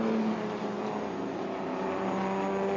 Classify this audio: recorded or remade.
recorded